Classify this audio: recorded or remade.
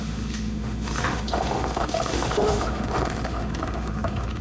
remade